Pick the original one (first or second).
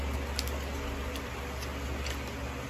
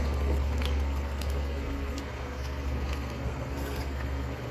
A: first